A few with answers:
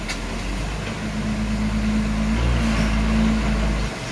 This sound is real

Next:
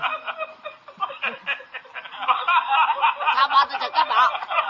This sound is real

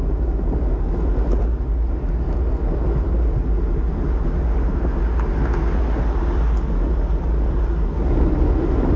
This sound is real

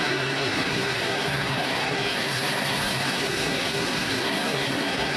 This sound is fake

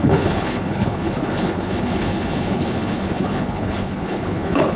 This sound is fake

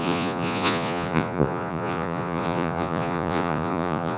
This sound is fake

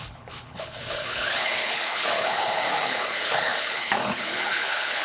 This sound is fake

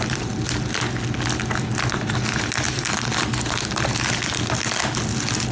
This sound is real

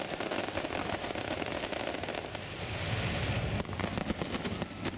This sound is real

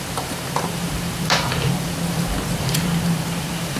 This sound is fake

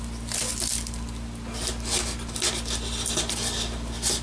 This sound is real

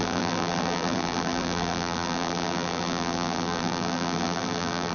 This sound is fake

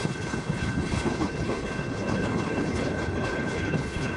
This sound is fake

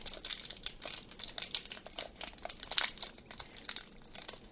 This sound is real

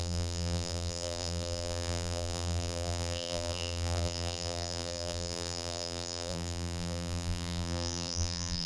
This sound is fake